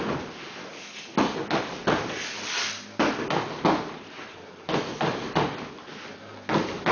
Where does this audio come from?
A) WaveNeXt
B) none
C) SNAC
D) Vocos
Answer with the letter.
B